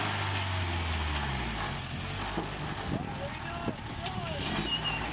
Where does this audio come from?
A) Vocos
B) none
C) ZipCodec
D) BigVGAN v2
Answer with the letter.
B